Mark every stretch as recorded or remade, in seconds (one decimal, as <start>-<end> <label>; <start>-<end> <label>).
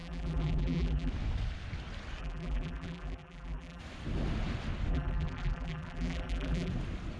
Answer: 0.0-1.1 remade; 1.1-2.2 recorded; 2.2-3.8 remade; 3.8-4.9 recorded; 4.9-6.7 remade; 6.7-7.2 recorded